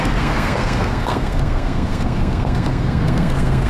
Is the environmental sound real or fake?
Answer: fake